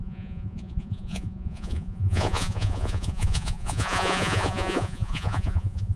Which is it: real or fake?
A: fake